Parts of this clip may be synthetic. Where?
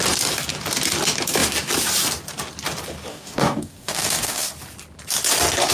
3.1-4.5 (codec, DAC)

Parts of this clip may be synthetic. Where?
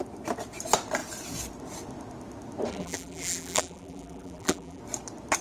2.7-4.8 (vocoder, BigVGAN v2)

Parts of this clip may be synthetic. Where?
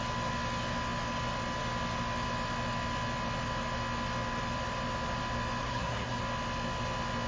5.6-6.2 (codec, SNAC)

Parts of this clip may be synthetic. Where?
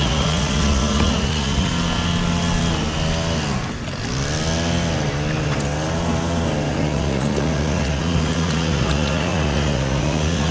0.0-1.7 (vocoder, Vocos); 6.7-10.5